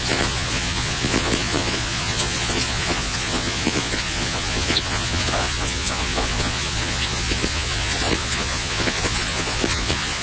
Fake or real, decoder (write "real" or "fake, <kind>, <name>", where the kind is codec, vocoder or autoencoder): fake, vocoder, Vocos